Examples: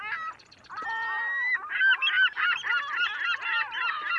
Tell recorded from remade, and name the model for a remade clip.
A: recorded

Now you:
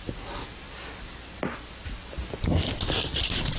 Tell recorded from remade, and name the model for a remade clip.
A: recorded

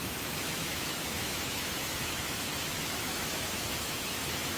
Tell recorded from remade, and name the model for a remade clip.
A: remade, autoencoder, DAC-VAE